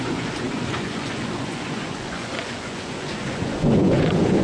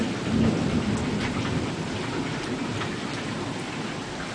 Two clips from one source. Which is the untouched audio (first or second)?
second